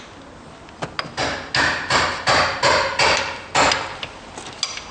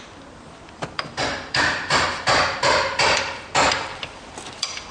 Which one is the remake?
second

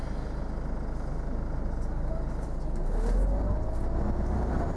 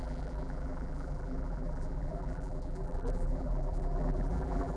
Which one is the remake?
second